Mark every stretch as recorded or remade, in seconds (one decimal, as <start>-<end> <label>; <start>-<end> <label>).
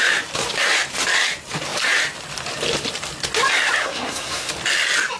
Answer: 0.0-3.8 recorded; 3.8-4.5 remade; 4.5-5.2 recorded